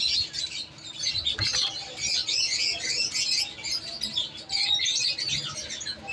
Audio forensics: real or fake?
real